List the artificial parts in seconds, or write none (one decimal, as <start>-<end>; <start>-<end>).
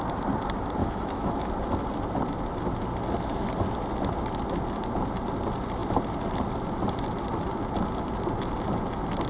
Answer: 0.8-1.5